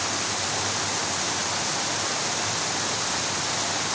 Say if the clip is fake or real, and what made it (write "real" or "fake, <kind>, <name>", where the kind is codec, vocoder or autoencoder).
real